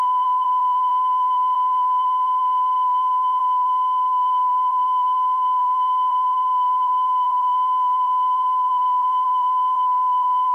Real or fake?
fake